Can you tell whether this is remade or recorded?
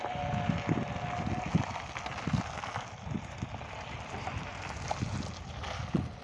recorded